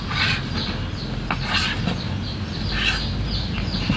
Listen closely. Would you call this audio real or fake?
real